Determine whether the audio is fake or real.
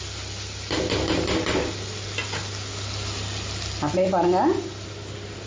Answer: real